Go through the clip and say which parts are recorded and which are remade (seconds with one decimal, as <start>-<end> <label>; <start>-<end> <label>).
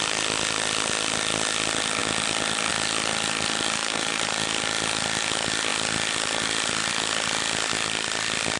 0.0-3.8 recorded; 3.8-4.4 remade; 4.4-8.6 recorded